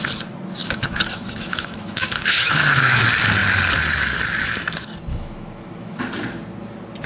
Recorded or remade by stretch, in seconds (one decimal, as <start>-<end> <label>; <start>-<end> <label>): 0.0-0.6 recorded; 0.6-3.0 remade; 3.0-5.1 recorded; 5.1-6.0 remade; 6.0-7.1 recorded